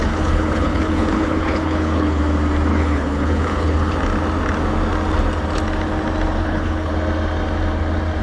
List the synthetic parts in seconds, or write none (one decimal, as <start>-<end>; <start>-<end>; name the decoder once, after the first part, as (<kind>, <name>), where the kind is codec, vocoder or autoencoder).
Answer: 0.0-2.2 (codec, HILCodec); 2.7-3.9; 6.4-6.9